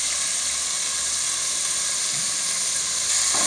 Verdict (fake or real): real